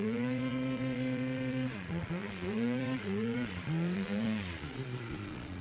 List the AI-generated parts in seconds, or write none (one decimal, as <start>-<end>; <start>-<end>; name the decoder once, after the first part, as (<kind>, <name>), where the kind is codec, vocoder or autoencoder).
0.0-5.6 (vocoder, Vocos)